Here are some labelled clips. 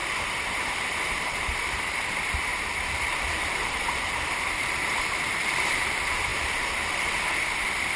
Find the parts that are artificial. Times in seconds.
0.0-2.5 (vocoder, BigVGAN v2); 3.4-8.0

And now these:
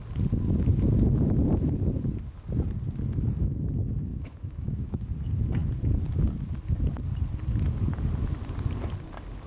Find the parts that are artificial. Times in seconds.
4.1-5.1 (autoencoder, DAC-VAE)

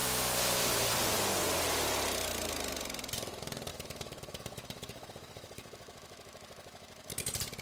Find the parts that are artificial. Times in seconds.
3.7-7.1 (autoencoder, DAC-VAE)

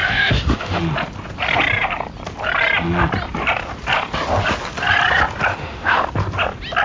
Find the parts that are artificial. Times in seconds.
0.0-0.8 (autoencoder, DAC-VAE); 5.5-6.1

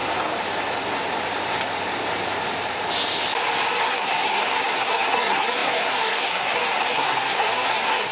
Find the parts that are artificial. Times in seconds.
3.8-8.1 (codec, SNAC)